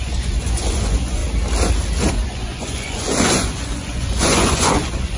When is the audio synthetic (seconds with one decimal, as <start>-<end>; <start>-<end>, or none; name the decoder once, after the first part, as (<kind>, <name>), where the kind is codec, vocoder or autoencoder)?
0.0-1.2 (vocoder, Vocos); 2.1-5.2